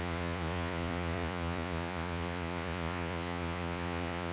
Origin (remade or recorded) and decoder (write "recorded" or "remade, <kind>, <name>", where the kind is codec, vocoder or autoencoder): remade, vocoder, Vocos